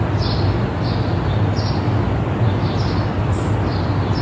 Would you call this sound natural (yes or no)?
yes